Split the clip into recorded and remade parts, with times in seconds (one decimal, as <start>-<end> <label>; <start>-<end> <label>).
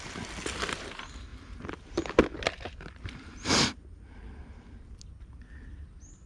0.0-6.3 recorded